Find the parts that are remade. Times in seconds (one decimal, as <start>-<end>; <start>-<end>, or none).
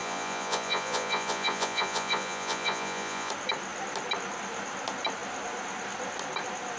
0.0-3.3